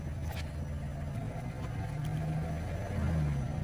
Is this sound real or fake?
real